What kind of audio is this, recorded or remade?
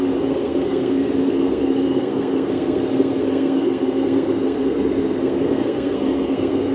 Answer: remade